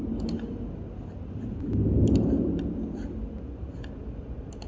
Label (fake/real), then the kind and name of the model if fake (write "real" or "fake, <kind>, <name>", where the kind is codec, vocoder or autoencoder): real